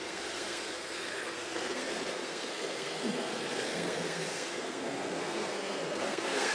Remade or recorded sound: remade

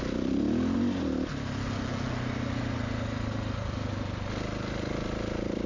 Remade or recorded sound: recorded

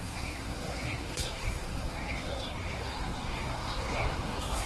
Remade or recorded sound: remade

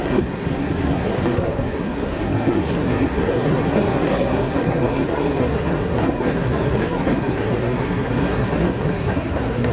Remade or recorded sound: remade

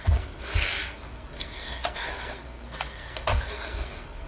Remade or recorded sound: remade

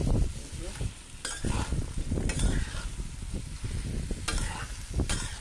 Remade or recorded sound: recorded